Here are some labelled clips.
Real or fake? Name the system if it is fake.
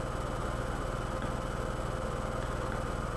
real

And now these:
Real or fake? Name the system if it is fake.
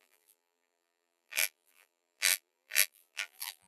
fake, vocoder, BigVGAN v2